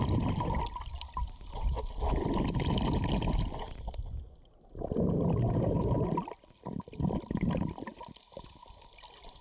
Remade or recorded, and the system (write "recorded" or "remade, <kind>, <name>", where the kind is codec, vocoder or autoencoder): recorded